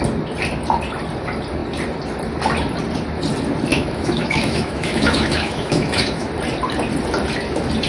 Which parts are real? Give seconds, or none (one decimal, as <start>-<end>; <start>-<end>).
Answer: 0.0-3.7; 6.3-7.9